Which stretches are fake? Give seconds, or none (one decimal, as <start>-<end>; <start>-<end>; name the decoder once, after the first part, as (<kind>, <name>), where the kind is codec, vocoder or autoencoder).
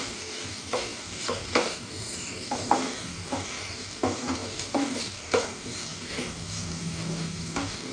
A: 0.0-7.9 (codec, DAC)